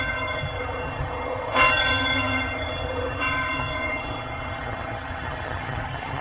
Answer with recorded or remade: remade